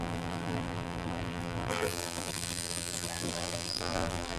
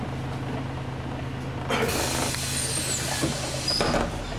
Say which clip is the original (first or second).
second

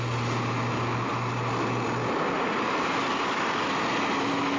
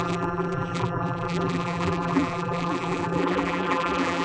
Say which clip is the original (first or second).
first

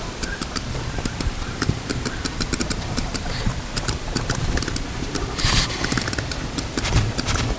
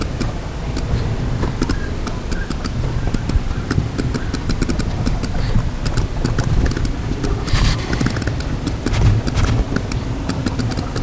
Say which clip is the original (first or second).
second